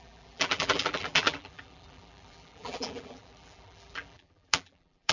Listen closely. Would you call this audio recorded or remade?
remade